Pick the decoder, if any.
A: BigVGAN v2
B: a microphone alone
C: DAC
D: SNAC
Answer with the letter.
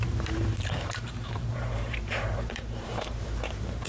A